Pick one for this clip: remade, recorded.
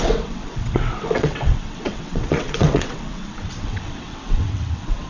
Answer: remade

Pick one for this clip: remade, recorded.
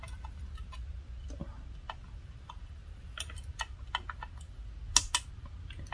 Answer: recorded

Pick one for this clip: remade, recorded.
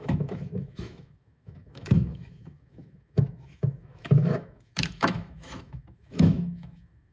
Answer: remade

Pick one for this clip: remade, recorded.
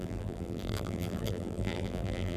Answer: remade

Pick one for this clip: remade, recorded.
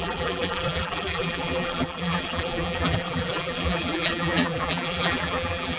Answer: remade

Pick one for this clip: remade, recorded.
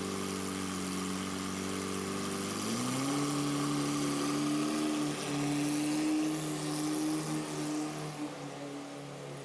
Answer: recorded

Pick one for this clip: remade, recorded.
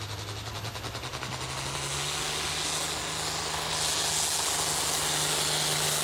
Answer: recorded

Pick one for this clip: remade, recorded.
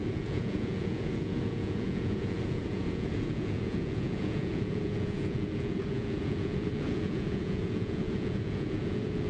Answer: remade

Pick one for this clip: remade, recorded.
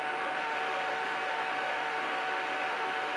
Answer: remade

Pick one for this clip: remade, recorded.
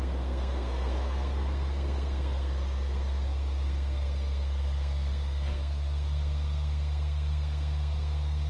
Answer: remade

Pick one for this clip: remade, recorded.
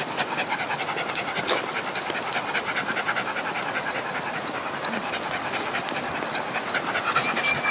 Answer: recorded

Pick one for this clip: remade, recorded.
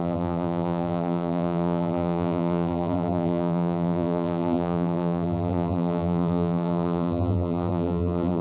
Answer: remade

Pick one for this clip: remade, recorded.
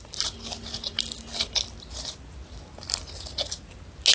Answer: recorded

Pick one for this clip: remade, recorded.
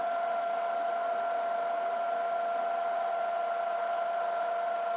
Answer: recorded